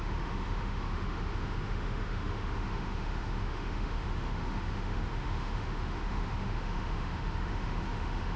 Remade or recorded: remade